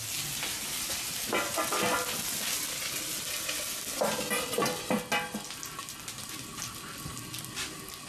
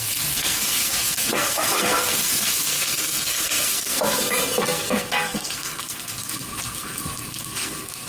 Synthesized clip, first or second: second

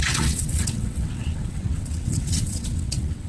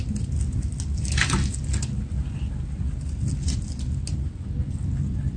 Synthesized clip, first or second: first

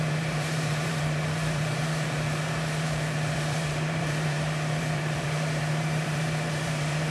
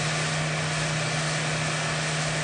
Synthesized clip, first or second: first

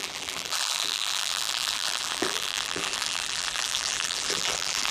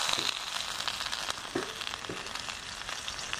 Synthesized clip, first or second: first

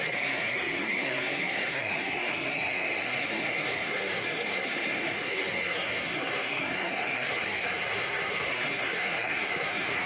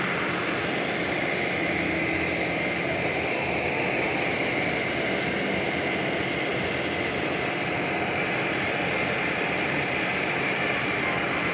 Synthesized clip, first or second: first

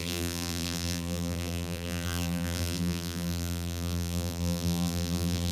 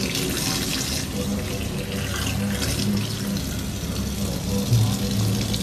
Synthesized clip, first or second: first